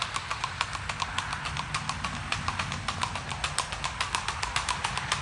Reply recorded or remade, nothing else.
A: recorded